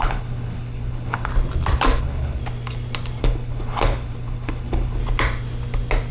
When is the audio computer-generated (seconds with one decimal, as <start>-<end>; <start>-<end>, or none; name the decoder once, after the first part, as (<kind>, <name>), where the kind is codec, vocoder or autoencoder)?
0.0-1.3 (codec, HILCodec); 2.0-2.4; 3.2-5.0